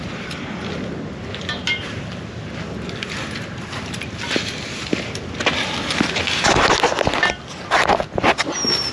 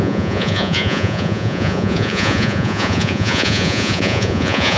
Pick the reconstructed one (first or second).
second